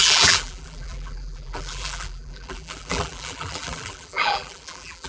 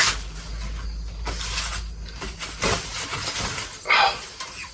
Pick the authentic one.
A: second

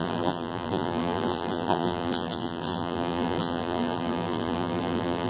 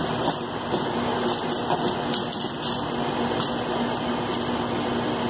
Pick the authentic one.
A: second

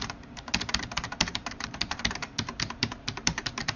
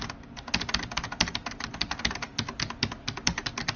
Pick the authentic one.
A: second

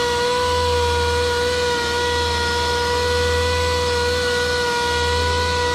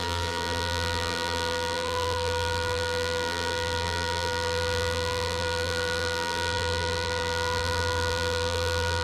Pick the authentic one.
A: first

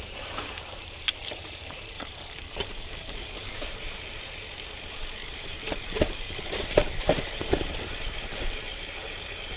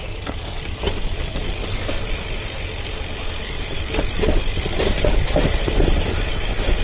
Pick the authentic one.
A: second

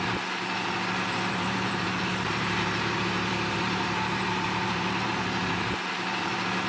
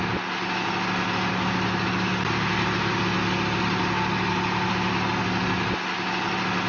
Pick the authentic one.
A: second